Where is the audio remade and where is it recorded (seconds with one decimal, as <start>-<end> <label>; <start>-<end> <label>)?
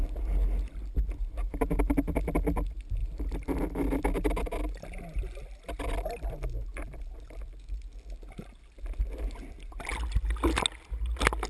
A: 0.0-11.5 recorded